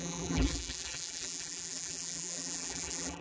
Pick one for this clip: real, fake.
fake